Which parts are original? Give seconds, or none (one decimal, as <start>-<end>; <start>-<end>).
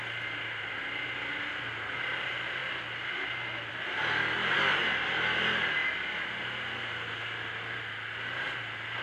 0.0-9.0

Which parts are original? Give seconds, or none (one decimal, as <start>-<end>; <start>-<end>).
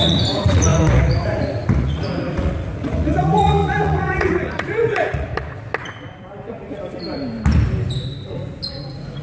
5.3-8.7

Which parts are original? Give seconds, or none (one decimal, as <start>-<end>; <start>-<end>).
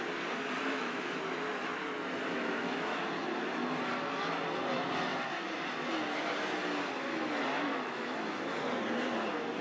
0.0-0.6; 1.2-2.3; 3.0-7.7; 8.6-9.6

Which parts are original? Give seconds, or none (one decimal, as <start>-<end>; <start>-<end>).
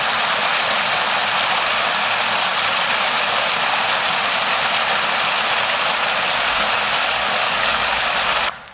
0.0-6.5; 8.0-8.7